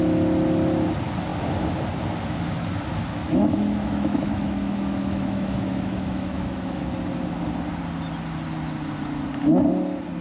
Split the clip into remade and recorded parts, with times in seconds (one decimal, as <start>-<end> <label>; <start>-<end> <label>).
0.0-3.2 recorded; 3.2-6.9 remade; 6.9-10.2 recorded